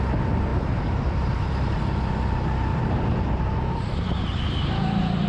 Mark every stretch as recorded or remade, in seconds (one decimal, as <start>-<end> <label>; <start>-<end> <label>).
0.0-0.5 recorded; 0.5-1.8 remade; 1.8-2.7 recorded; 2.7-5.3 remade

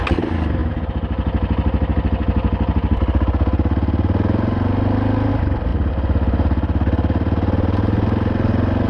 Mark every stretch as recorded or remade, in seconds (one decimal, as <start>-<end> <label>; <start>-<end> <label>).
0.0-8.9 recorded

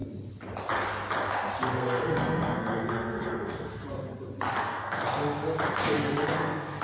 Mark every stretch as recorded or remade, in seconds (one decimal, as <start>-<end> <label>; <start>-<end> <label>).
0.0-1.7 recorded; 1.7-3.8 remade; 3.8-4.6 recorded; 4.6-5.0 remade; 5.0-5.7 recorded; 5.7-6.8 remade

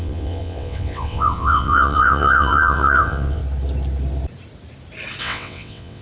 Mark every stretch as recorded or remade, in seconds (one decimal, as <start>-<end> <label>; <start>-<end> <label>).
0.0-3.4 remade; 3.4-5.2 recorded; 5.2-6.0 remade

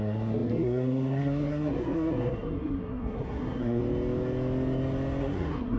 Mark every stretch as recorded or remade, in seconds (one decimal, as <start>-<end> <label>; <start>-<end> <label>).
0.0-3.8 remade; 3.8-5.2 recorded; 5.2-5.8 remade